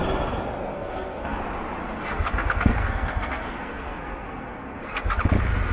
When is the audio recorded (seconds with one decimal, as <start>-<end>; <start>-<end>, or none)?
0.0-0.7; 1.4-1.8; 5.2-5.7